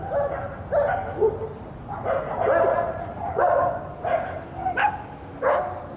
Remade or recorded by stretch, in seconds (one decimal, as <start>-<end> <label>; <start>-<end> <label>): 0.0-2.7 recorded; 2.7-3.4 remade; 3.4-6.0 recorded